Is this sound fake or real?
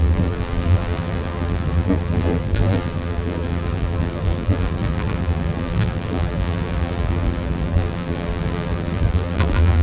fake